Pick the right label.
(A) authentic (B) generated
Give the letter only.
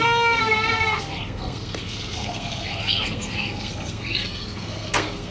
B